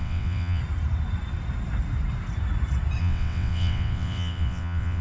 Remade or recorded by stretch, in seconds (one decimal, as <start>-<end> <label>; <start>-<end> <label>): 0.0-0.6 remade; 0.6-3.0 recorded; 3.0-5.0 remade